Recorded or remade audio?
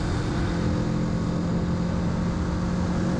recorded